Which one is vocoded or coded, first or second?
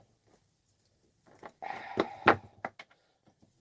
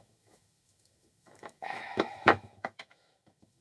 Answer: second